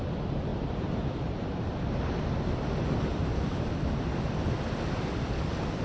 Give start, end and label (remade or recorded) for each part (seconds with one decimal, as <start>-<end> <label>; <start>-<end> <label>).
0.0-0.5 recorded; 0.5-2.2 remade; 2.2-5.8 recorded